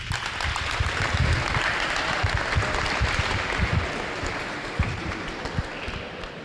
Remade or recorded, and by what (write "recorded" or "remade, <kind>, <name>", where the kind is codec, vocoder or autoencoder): recorded